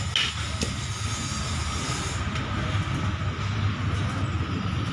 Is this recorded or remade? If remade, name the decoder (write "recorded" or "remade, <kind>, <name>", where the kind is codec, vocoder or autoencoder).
recorded